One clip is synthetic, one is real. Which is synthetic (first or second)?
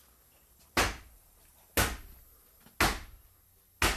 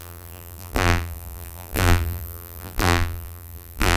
second